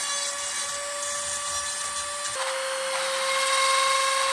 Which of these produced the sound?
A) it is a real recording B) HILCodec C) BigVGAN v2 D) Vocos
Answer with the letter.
A